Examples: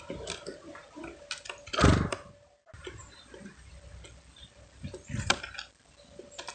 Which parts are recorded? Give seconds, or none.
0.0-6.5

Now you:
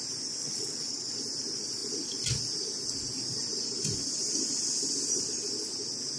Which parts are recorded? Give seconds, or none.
0.0-0.4; 1.2-6.2